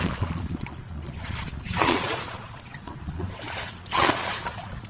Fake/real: fake